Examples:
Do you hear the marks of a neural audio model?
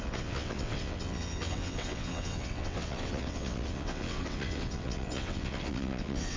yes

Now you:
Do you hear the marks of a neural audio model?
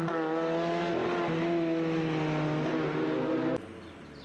no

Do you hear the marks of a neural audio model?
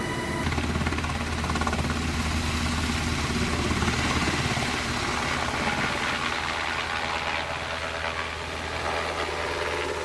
no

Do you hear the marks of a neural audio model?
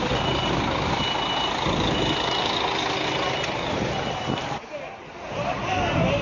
no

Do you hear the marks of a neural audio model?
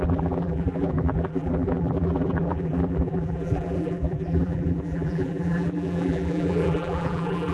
yes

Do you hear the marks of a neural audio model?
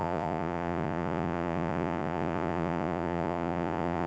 yes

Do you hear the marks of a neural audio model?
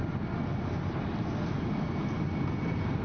no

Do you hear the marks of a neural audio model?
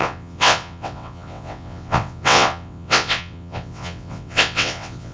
yes